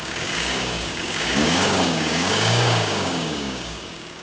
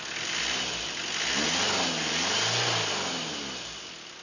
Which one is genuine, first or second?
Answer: second